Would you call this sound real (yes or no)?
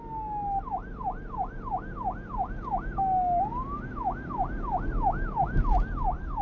yes